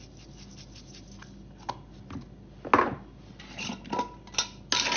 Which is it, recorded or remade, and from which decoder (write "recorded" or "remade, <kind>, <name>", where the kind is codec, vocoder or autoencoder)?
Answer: recorded